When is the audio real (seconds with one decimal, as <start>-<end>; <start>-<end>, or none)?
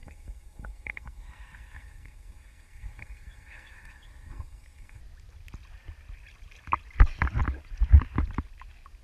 5.0-9.0